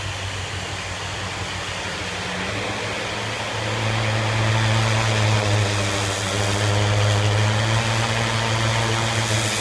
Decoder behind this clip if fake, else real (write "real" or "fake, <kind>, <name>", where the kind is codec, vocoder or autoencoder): real